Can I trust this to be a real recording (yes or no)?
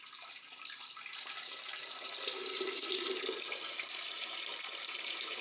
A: no